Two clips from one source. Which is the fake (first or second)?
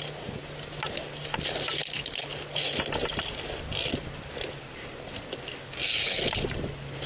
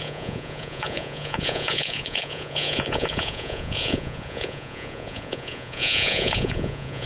second